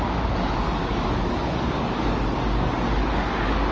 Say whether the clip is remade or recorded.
remade